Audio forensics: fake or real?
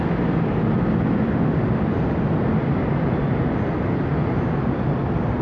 real